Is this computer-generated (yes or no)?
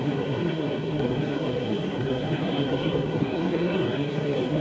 yes